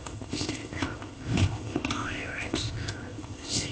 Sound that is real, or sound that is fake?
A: fake